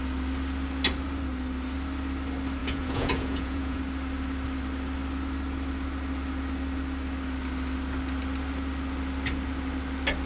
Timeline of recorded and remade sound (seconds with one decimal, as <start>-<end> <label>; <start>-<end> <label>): 0.0-2.6 recorded; 2.6-3.8 remade; 3.8-10.3 recorded